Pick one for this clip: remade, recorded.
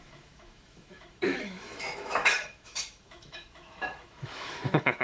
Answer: remade